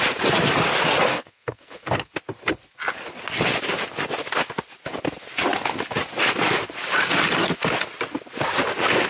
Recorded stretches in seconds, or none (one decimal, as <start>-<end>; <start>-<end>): 0.0-1.1; 2.1-9.1